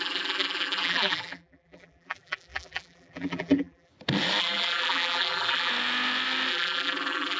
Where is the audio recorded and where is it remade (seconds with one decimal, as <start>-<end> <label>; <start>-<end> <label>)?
0.0-3.9 remade; 3.9-4.4 recorded; 4.4-5.7 remade; 5.7-6.5 recorded; 6.5-7.4 remade